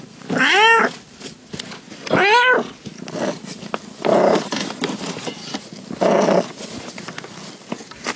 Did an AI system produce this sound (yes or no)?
no